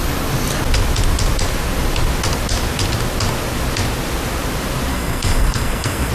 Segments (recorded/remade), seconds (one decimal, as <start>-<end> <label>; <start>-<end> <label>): 0.0-4.9 recorded; 4.9-6.1 remade